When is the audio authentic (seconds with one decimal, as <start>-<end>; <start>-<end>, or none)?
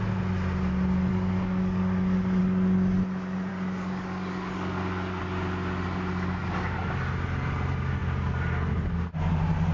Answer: 0.0-1.1; 2.4-3.5; 5.2-6.4; 6.9-9.7